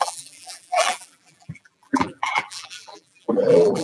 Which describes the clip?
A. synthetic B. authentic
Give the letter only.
A